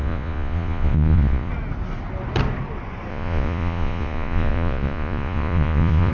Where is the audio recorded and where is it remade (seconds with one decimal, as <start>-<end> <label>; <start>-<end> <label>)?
0.0-1.5 remade; 1.5-3.1 recorded; 3.1-6.1 remade